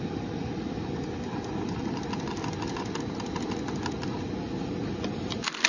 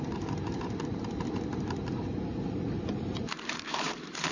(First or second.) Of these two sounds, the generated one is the second